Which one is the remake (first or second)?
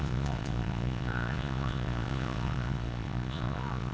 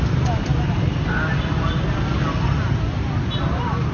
first